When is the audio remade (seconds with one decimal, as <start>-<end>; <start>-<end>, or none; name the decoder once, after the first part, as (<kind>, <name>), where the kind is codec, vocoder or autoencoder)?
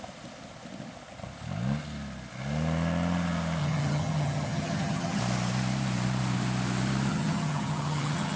3.6-5.2 (vocoder, HiFi-GAN); 7.1-8.4